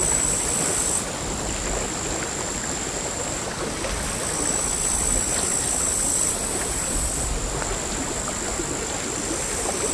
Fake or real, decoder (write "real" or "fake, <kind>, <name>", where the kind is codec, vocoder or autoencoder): real